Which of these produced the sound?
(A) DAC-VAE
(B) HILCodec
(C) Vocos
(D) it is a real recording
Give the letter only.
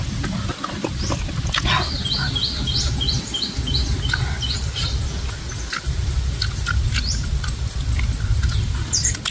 D